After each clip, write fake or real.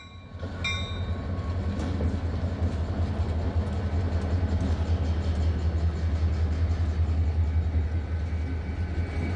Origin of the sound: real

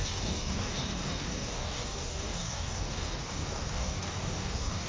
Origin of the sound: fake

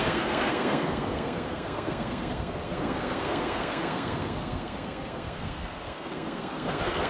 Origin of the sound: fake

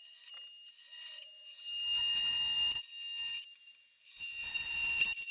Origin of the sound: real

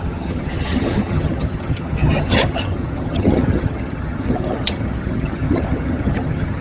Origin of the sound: fake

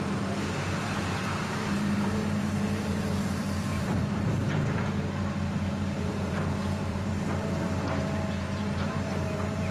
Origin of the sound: fake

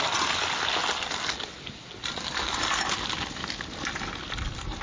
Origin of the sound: real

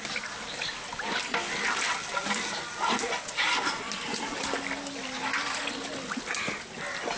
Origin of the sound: real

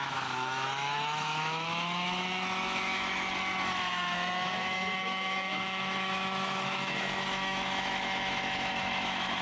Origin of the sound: fake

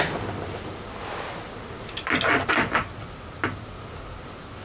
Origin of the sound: real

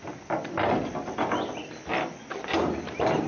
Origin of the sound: real